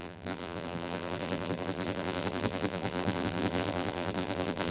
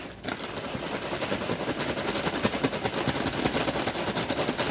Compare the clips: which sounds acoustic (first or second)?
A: second